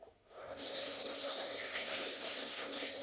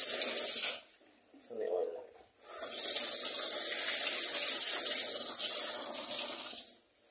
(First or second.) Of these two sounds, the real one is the second